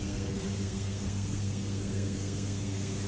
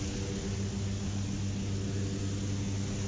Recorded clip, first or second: second